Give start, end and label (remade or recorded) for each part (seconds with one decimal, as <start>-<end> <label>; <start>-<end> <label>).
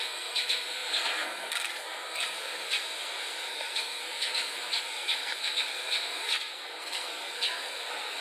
0.0-8.2 remade